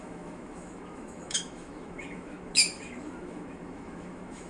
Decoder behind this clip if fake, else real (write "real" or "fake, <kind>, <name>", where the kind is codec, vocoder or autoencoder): fake, autoencoder, DAC-VAE